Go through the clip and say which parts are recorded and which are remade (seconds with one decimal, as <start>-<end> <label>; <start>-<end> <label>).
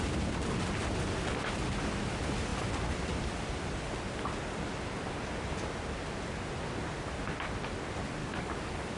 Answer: 0.0-8.2 recorded; 8.2-9.0 remade